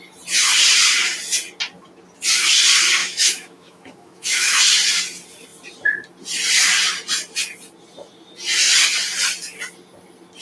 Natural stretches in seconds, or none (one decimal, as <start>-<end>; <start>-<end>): 0.0-3.0; 4.6-10.4